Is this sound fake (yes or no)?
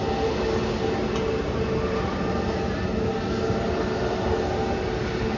no